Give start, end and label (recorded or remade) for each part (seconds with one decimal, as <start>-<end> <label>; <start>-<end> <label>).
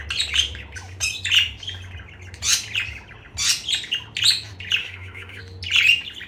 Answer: 0.0-4.8 recorded; 4.8-5.4 remade; 5.4-6.3 recorded